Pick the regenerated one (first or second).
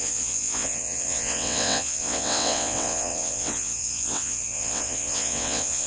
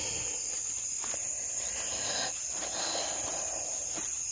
first